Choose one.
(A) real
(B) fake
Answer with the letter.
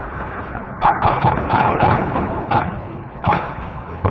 B